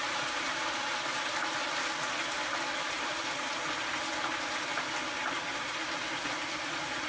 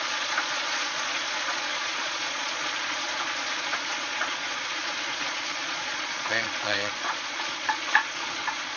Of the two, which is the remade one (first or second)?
second